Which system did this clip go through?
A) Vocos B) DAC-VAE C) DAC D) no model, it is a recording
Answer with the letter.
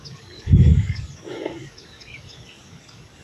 C